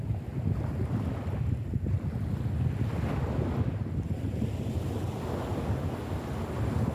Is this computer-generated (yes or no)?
no